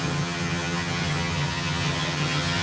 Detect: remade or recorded remade